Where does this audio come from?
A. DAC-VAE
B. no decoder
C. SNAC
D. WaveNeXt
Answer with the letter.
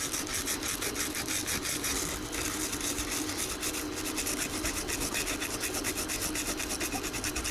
B